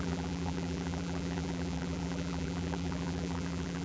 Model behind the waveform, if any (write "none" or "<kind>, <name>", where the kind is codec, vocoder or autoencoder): vocoder, BigVGAN v2